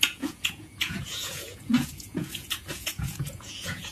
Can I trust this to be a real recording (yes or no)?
no